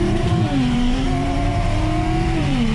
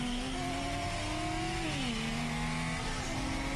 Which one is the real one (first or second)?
second